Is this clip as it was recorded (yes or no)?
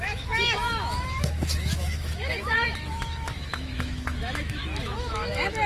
no